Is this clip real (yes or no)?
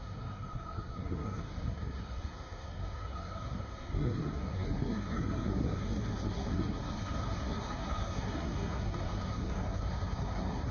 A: no